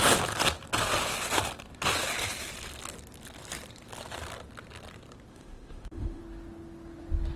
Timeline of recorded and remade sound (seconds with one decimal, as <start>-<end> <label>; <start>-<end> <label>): 0.0-5.3 recorded; 5.3-6.2 remade; 6.2-7.4 recorded